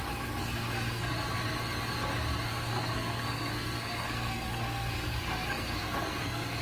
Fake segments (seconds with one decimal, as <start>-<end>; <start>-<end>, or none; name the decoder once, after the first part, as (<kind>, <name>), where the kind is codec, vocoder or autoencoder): 0.4-1.1 (codec, SNAC); 2.5-6.6